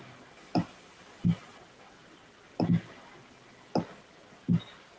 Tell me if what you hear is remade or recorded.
recorded